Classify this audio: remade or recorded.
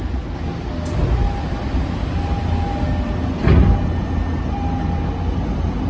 recorded